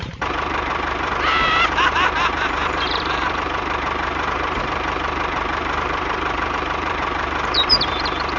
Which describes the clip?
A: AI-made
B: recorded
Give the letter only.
A